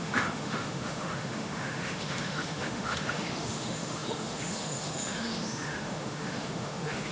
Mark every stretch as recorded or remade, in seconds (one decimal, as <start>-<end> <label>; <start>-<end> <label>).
0.0-7.1 remade